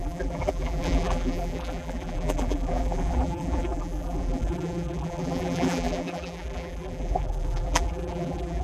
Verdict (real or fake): fake